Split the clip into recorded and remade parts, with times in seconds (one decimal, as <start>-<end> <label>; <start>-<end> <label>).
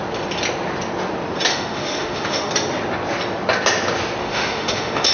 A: 0.0-1.5 recorded; 1.5-2.5 remade; 2.5-4.2 recorded; 4.2-5.1 remade